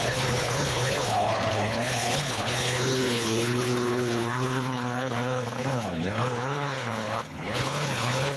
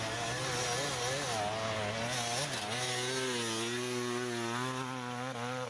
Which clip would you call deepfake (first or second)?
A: first